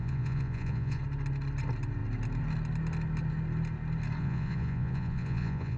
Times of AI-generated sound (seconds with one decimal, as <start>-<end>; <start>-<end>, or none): 0.0-1.0; 4.2-5.8